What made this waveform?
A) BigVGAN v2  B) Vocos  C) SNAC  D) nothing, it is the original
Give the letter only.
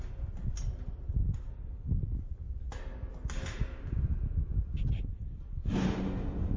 D